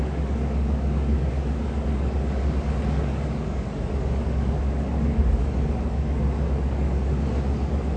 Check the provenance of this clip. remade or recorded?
remade